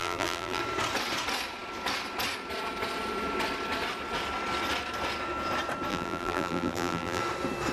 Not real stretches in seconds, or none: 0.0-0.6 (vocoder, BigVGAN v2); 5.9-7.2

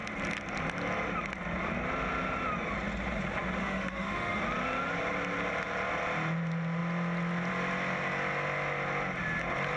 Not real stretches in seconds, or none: 3.6-4.4 (autoencoder, DAC-VAE)

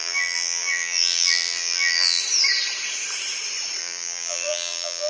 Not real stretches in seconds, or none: 0.0-2.2 (vocoder, BigVGAN v2); 3.8-5.1